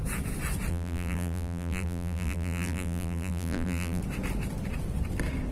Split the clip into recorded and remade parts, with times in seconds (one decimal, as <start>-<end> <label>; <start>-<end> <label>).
0.0-0.7 recorded; 0.7-4.0 remade; 4.0-5.5 recorded

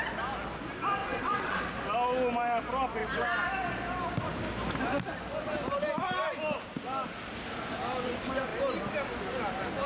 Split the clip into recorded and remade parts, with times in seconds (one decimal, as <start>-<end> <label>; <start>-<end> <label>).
0.0-1.0 recorded; 1.0-1.6 remade; 1.6-9.9 recorded

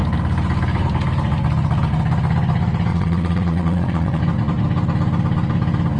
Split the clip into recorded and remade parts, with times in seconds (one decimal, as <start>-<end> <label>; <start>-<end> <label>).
0.0-2.9 recorded; 2.9-4.2 remade; 4.2-6.0 recorded

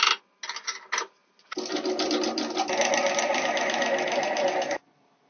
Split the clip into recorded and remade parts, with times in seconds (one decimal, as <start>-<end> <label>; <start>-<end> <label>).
0.0-5.3 recorded